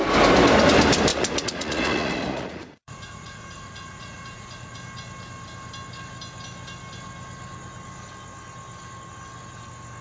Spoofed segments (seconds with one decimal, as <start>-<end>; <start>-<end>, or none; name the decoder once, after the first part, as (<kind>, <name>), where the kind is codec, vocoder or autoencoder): 1.1-4.8 (vocoder, Vocos)